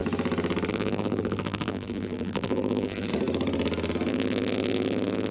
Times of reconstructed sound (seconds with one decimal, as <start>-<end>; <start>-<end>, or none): 0.7-3.1; 4.1-5.3